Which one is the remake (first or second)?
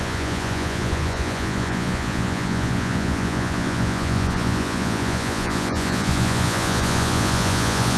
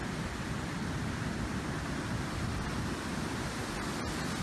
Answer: first